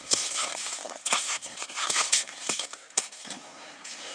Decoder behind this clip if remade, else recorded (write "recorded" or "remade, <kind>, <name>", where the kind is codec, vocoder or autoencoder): remade, codec, SNAC